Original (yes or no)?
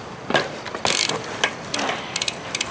yes